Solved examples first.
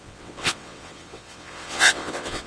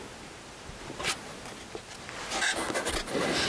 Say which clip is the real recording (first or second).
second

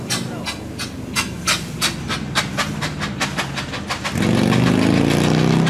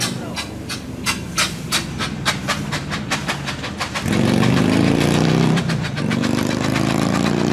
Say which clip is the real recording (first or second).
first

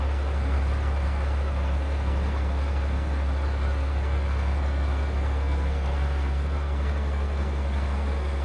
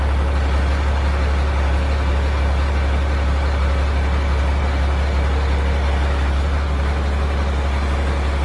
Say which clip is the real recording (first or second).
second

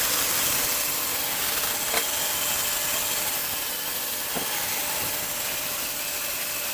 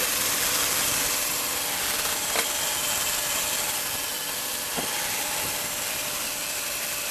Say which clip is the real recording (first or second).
first